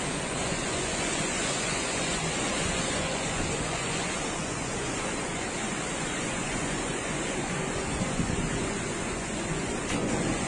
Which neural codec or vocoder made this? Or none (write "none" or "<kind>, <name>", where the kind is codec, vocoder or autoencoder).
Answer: vocoder, Vocos